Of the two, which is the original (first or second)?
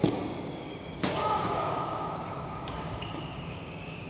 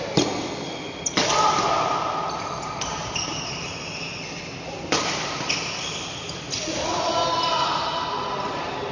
second